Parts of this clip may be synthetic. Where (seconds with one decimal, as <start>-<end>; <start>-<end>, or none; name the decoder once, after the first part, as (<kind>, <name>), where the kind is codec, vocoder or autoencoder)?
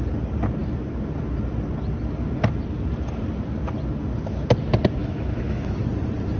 5.0-5.8 (autoencoder, DAC-VAE)